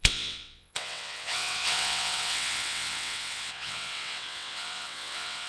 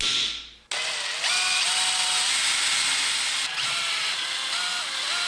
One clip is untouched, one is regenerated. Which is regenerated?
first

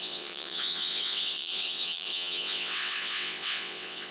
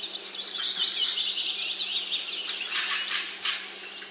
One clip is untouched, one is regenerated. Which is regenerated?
first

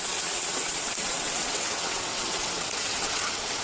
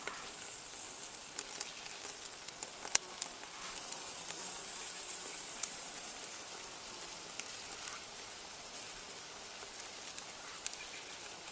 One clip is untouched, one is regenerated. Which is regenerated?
first